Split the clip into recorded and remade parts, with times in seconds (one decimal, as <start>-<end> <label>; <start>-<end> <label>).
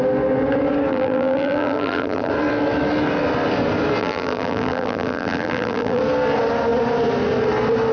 0.0-0.9 recorded; 0.9-2.3 remade; 2.3-4.0 recorded; 4.0-6.0 remade; 6.0-7.9 recorded